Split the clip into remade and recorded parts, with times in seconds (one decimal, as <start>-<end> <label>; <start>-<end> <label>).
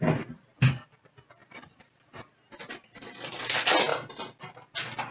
0.0-1.4 recorded; 1.4-3.4 remade; 3.4-5.1 recorded